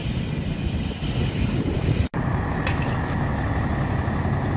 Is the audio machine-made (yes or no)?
no